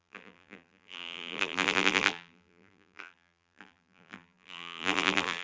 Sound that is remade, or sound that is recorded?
remade